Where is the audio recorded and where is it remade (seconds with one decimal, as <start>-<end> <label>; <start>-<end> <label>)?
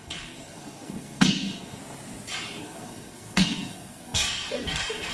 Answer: 0.0-1.8 remade; 1.8-2.6 recorded; 2.6-5.1 remade